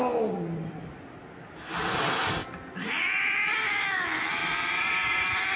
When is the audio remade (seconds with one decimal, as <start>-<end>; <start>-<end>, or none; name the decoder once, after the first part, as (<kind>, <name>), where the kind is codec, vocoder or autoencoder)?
4.4-5.6 (vocoder, BigVGAN v2)